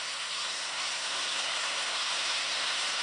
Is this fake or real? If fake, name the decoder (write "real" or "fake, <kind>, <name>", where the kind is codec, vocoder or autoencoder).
fake, codec, SNAC